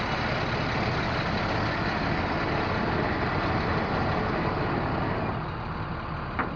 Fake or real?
real